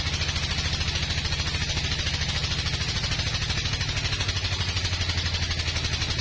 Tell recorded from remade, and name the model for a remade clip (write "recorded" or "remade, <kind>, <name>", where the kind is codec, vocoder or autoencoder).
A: recorded